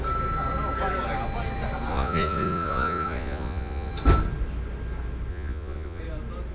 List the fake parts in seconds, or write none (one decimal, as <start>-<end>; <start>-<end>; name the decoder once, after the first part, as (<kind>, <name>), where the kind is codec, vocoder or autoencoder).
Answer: 1.9-3.9 (vocoder, Vocos); 5.3-6.0